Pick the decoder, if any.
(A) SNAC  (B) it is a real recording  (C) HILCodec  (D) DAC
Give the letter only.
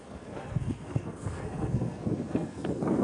A